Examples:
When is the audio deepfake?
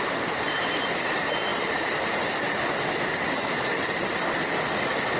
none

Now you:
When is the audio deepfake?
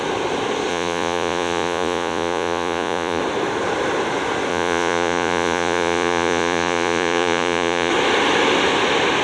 0.7-3.2 (vocoder, Vocos); 4.5-7.9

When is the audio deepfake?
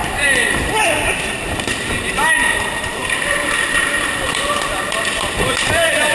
0.0-6.1 (vocoder, BigVGAN v2)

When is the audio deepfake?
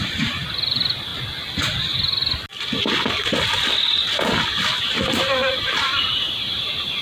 0.0-1.1 (vocoder, BigVGAN v2); 4.8-7.0